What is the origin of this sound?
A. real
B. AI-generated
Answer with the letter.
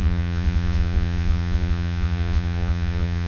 B